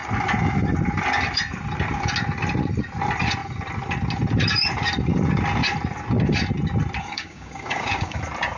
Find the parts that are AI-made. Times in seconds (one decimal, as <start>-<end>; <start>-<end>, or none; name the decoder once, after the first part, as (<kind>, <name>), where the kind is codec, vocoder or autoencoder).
7.0-8.2 (codec, DAC)